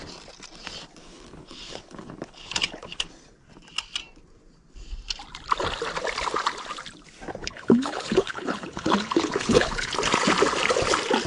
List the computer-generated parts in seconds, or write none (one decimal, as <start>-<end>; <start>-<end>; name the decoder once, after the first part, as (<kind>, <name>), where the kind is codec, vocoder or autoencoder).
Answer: 1.0-3.1 (codec, HILCodec); 7.4-9.9